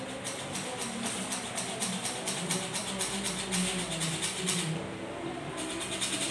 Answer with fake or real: real